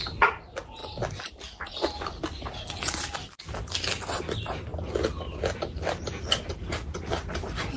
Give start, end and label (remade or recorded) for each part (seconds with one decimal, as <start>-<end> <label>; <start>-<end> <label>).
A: 0.0-7.8 recorded